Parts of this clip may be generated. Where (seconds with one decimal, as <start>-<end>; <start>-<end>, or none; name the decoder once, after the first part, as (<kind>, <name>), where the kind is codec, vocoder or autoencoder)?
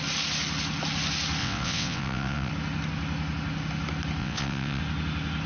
1.4-2.5 (vocoder, WaveNeXt); 4.2-4.8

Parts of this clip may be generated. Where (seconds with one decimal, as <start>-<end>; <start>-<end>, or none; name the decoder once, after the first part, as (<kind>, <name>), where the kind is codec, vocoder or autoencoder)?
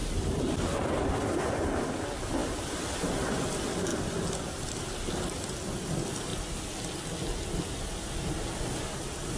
0.0-1.9 (vocoder, BigVGAN v2); 2.4-3.3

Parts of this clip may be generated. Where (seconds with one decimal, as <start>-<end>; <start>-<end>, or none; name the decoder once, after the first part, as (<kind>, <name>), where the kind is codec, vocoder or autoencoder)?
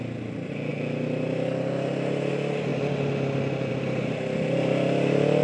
none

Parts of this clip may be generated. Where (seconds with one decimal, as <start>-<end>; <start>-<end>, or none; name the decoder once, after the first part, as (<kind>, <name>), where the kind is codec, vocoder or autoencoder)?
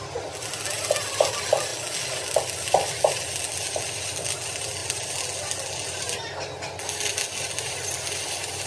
none